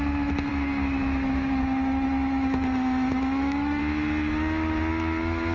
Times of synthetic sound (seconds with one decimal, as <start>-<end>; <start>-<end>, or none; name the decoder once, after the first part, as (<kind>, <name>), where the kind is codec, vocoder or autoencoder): 0.5-3.8 (autoencoder, DAC-VAE)